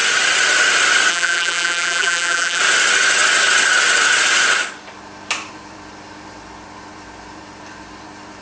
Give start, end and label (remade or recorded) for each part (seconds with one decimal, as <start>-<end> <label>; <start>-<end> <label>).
0.0-1.1 recorded; 1.1-2.6 remade; 2.6-8.4 recorded